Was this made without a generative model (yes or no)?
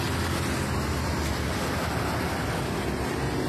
yes